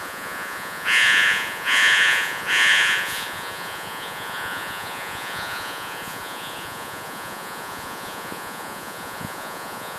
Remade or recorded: remade